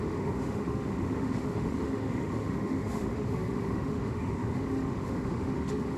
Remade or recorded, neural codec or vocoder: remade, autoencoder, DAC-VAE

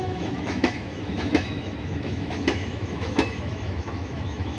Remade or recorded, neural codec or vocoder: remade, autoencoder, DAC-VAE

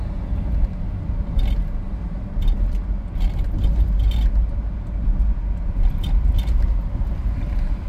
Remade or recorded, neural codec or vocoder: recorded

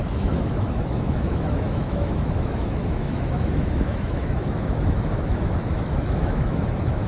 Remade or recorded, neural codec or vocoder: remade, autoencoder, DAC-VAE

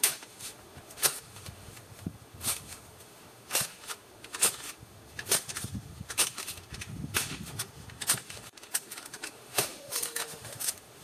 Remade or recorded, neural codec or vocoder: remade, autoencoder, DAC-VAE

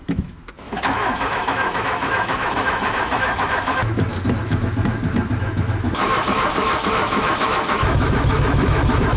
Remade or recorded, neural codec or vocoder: remade, autoencoder, DAC-VAE